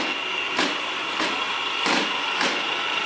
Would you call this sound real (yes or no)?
yes